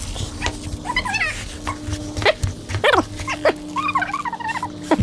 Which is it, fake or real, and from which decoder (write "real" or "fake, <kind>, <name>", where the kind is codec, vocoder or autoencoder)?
real